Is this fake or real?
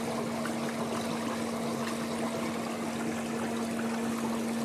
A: real